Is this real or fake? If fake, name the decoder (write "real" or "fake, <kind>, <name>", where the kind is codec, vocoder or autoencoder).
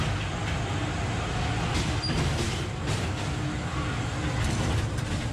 real